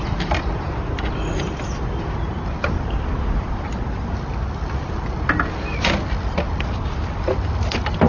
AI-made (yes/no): no